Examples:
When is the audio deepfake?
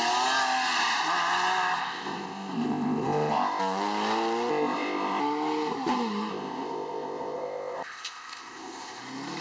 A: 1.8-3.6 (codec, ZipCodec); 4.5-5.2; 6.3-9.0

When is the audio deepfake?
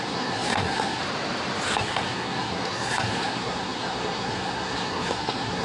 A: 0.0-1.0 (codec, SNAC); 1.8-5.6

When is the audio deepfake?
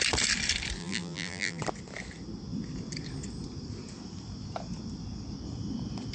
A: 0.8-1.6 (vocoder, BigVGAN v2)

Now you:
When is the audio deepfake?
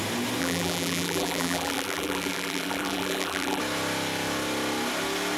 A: 0.4-3.6 (vocoder, BigVGAN v2)